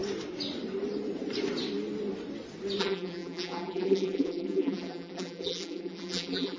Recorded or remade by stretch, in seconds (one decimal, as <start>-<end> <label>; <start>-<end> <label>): 0.0-2.8 recorded; 2.8-6.6 remade